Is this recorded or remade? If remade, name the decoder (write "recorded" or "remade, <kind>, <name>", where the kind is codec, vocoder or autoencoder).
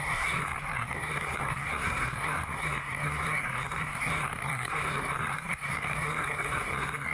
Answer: remade, codec, SNAC